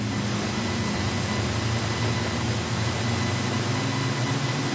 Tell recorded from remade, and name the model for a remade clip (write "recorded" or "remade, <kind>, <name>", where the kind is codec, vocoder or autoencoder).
recorded